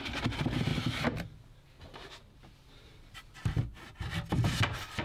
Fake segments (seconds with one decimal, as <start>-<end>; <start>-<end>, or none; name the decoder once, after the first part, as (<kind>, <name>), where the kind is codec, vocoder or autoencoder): none